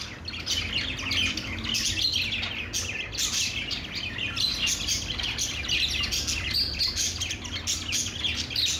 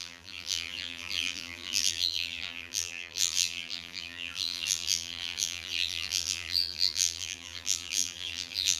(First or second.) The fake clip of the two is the second